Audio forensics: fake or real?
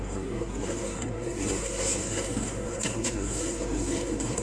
fake